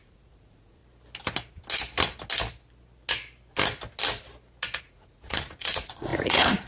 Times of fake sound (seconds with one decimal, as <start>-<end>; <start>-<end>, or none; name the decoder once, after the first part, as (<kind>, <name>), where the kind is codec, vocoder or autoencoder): 0.0-0.8 (vocoder, Vocos); 4.8-6.7